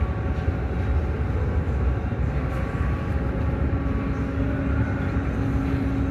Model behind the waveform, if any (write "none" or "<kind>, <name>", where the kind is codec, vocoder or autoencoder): none